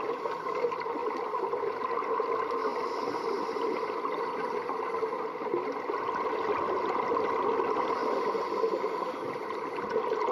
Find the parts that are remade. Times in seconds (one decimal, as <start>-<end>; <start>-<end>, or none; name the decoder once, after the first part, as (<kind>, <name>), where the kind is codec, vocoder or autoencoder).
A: 1.0-1.6 (vocoder, BigVGAN v2); 8.0-9.7